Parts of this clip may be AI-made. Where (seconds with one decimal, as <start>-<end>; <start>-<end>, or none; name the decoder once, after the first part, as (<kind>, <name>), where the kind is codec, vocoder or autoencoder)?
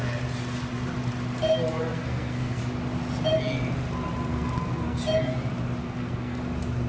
1.9-2.6 (codec, SNAC); 4.3-5.0; 5.8-6.4